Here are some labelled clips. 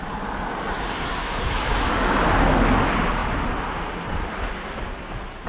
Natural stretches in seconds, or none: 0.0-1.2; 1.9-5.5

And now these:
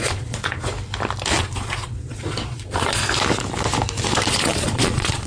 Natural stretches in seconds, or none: 0.7-1.4; 3.0-4.3

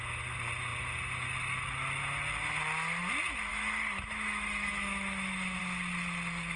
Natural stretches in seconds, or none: 0.0-3.5; 5.6-6.6